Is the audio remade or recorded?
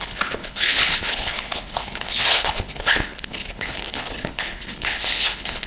remade